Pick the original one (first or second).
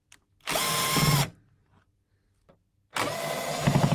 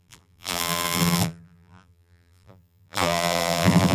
first